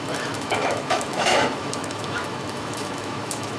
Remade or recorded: remade